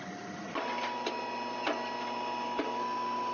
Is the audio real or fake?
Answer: real